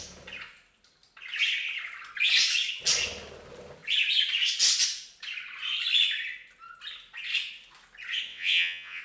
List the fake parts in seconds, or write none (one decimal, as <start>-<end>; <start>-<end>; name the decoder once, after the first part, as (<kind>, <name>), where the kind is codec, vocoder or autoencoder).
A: 8.3-9.0 (vocoder, WaveNeXt)